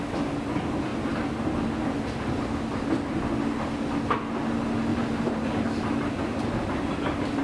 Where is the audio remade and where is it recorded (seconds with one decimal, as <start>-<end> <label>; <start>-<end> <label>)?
0.0-4.9 recorded; 4.9-7.4 remade